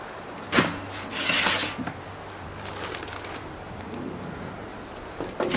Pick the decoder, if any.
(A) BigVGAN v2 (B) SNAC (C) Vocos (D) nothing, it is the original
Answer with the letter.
D